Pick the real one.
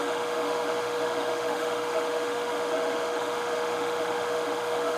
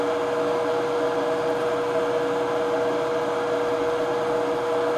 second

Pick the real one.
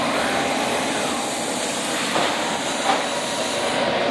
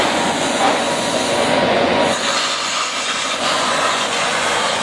first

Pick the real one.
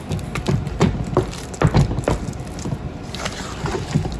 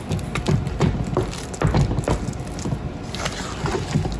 second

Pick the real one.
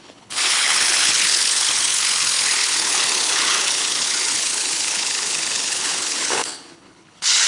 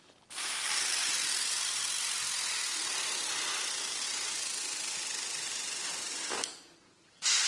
second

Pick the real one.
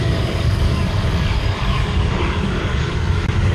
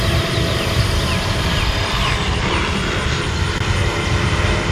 second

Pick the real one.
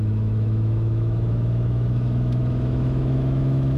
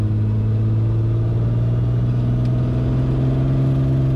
second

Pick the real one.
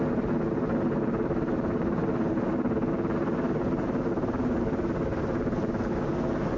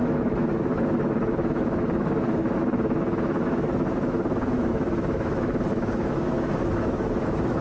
first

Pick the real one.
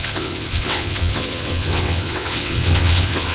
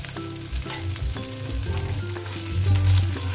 second